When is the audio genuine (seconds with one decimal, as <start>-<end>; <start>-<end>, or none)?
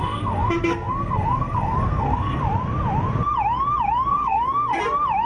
2.4-4.1; 4.8-5.3